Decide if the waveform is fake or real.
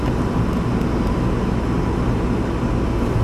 real